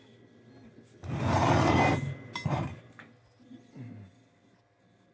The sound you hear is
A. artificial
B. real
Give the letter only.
B